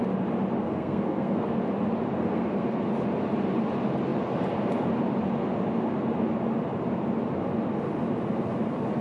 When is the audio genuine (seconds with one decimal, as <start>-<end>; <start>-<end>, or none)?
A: 0.0-0.6; 1.6-2.2; 2.8-9.0